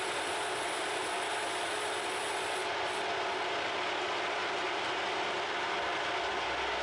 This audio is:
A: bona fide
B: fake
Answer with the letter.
A